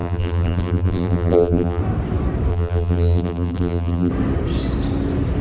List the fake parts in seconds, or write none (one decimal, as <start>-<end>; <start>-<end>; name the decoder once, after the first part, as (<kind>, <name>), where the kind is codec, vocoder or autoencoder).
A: 0.0-1.8 (vocoder, BigVGAN v2); 2.5-4.1